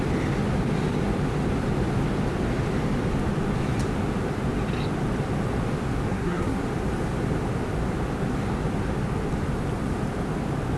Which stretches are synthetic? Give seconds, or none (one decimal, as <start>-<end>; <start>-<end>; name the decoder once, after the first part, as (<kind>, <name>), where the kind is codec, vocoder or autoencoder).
6.1-6.6 (codec, SNAC)